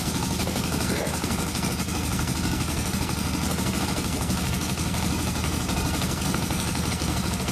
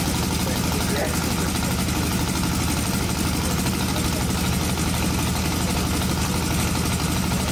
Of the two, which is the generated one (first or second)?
first